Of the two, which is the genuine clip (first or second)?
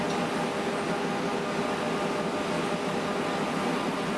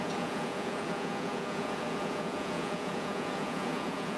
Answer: first